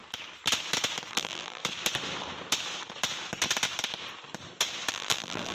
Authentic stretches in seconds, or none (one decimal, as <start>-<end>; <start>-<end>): 0.0-1.1; 1.6-4.9